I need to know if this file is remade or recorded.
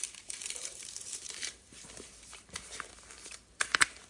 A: remade